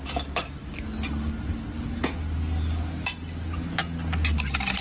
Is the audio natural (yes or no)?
yes